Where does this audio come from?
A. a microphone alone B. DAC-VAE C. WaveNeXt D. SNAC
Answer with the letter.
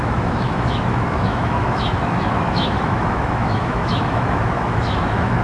B